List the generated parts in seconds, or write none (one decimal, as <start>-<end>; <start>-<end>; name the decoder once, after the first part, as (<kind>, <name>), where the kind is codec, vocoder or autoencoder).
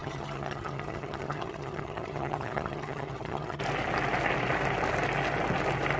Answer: 0.0-3.6 (vocoder, HiFi-GAN)